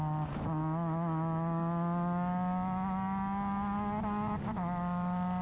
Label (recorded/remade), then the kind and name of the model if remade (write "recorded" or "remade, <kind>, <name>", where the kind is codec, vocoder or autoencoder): recorded